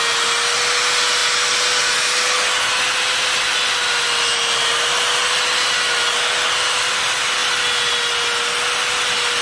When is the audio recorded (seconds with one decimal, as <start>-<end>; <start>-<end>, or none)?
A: 0.0-9.4